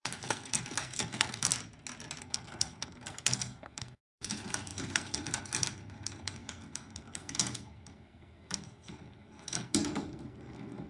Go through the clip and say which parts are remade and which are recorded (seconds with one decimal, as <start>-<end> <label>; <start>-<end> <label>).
0.0-1.5 remade; 1.5-2.2 recorded; 2.2-10.9 remade